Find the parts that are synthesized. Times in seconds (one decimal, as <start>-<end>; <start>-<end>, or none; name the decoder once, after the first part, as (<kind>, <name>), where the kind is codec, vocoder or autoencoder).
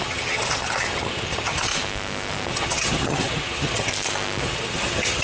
0.0-1.7 (vocoder, HiFi-GAN); 2.5-3.9; 4.4-5.2